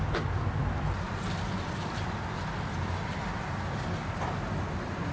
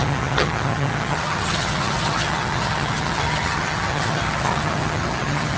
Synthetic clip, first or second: second